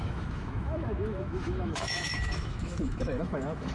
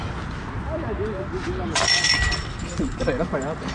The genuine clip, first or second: second